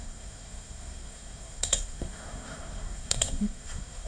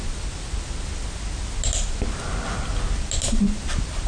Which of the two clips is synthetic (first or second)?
first